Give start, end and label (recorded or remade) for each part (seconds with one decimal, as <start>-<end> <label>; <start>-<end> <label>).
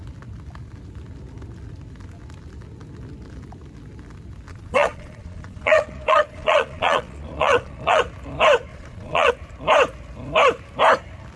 0.0-4.5 recorded; 4.5-8.0 remade; 8.0-8.7 recorded; 8.7-9.3 remade; 9.3-11.4 recorded